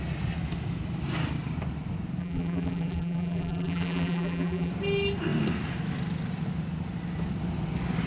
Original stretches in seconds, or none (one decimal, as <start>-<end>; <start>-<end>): 0.0-2.2; 4.7-8.1